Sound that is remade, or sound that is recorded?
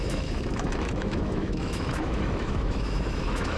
remade